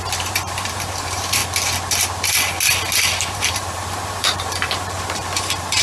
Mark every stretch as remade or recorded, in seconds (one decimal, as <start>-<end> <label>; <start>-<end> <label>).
0.0-1.4 remade; 1.4-3.3 recorded; 3.3-5.8 remade